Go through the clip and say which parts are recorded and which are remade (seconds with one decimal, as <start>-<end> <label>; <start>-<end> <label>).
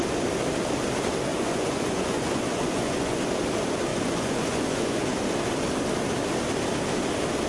0.0-1.3 recorded; 1.3-3.2 remade; 3.2-3.9 recorded; 3.9-5.1 remade; 5.1-7.5 recorded